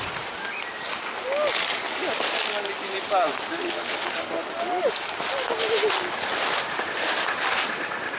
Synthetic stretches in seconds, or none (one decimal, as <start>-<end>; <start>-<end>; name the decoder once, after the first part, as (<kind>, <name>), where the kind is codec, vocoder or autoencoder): none